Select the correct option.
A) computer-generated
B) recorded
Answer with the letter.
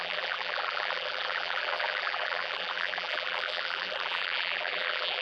A